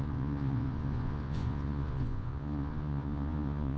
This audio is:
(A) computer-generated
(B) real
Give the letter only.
A